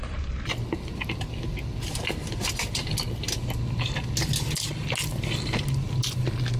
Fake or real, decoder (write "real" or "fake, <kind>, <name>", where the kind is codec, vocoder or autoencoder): real